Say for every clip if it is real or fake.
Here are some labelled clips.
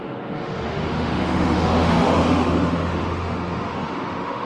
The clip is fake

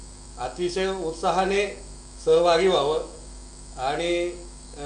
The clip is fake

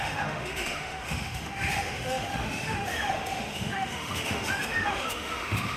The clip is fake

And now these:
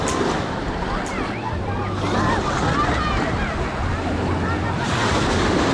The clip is real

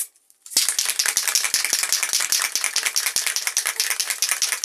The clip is real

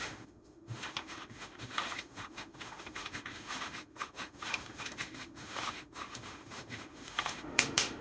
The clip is fake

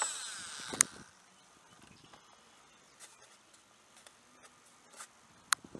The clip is real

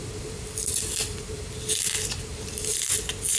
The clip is real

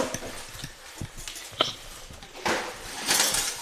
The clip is real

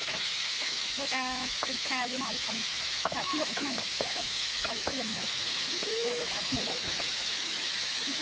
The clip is fake